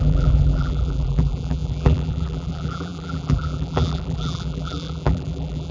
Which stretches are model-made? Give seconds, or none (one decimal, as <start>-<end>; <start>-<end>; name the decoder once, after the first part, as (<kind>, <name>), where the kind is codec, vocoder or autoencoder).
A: 0.0-5.7 (vocoder, BigVGAN v2)